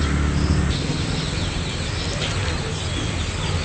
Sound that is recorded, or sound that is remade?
recorded